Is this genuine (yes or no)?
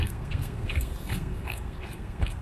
no